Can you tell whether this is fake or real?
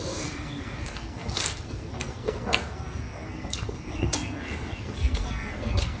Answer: fake